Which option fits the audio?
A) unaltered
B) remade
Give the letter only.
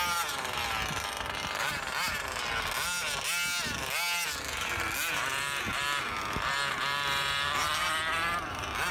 A